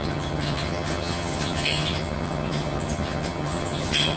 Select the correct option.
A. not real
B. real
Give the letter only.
A